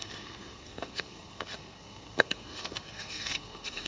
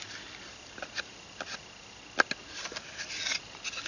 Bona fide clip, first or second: second